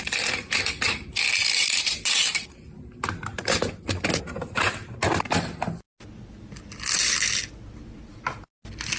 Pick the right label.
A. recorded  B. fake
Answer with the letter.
A